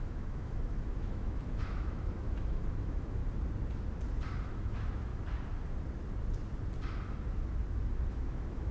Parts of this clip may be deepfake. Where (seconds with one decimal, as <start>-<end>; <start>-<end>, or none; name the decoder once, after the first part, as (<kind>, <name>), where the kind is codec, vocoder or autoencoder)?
0.0-3.2 (autoencoder, DAC-VAE); 4.5-5.1; 8.1-8.7